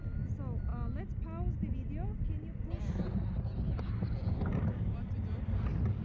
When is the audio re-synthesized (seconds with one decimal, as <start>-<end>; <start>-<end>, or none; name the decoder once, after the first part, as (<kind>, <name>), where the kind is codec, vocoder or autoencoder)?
none